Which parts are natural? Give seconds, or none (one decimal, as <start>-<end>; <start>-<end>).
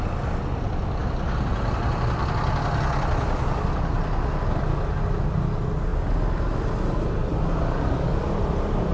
0.0-8.9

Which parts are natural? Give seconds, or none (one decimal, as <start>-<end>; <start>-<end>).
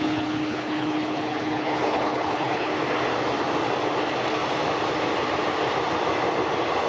2.7-6.9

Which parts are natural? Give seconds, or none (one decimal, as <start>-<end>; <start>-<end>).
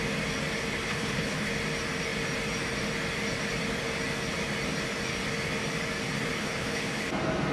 0.0-0.8; 1.5-6.4; 7.1-7.5